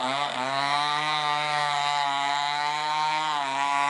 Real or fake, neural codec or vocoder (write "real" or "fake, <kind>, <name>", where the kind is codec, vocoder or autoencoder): fake, codec, SNAC